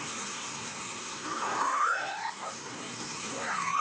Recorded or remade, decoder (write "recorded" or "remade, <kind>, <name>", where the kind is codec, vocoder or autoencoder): remade, codec, SNAC